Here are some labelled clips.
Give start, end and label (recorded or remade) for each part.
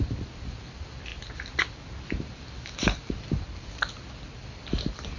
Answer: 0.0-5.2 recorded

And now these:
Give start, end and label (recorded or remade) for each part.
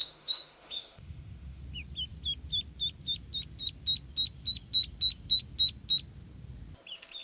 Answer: 0.0-1.6 remade; 1.6-7.2 recorded